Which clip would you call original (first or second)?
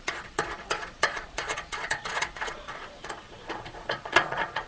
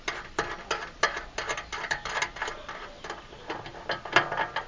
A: second